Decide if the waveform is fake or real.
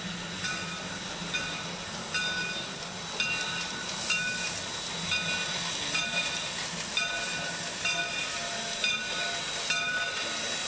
real